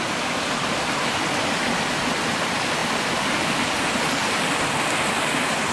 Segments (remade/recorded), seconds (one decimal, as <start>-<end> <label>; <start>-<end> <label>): 0.0-5.7 recorded